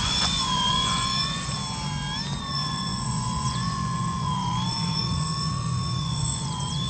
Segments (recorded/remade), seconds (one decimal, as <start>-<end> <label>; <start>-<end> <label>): 0.0-1.6 remade; 1.6-2.4 recorded; 2.4-6.9 remade